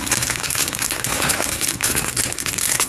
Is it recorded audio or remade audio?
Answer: remade